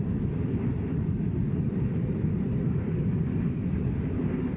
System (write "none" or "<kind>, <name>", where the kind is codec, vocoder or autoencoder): none